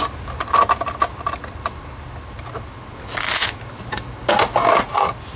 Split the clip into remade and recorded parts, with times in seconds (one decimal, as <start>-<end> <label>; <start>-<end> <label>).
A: 0.0-5.4 recorded